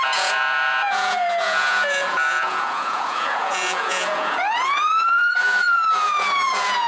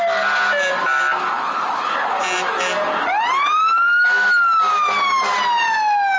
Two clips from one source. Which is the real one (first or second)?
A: second